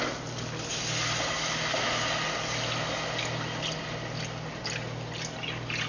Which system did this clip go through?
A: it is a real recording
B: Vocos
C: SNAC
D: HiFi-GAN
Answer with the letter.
A